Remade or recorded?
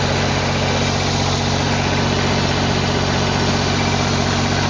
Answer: recorded